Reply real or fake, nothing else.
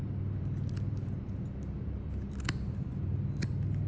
fake